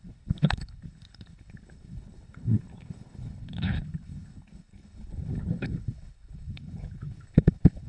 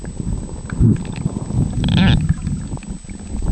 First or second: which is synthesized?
first